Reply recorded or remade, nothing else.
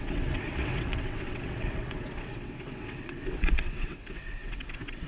remade